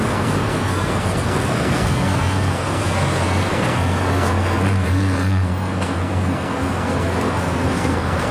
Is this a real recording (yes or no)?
no